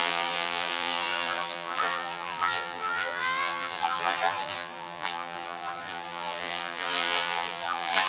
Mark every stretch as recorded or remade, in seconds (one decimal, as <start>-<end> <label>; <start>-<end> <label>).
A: 0.0-8.1 remade